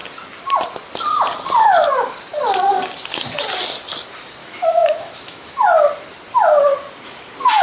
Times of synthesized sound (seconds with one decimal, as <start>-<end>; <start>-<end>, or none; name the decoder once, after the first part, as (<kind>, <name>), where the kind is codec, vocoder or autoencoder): 4.4-5.5 (autoencoder, DAC-VAE)

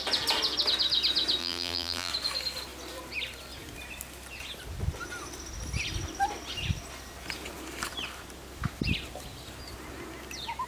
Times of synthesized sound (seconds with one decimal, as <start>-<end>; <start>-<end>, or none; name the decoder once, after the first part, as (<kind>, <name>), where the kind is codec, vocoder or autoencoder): 1.4-2.1 (vocoder, BigVGAN v2)

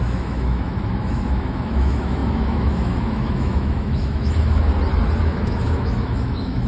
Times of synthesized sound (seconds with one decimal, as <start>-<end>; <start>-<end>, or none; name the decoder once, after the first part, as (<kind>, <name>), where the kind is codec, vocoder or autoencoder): 0.0-4.7 (autoencoder, DAC-VAE); 5.2-6.7

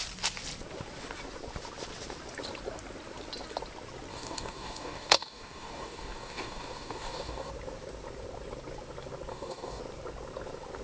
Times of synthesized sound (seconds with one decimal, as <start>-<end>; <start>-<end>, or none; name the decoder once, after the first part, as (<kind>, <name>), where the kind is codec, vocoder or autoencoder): 4.1-7.5 (codec, DAC); 9.3-9.8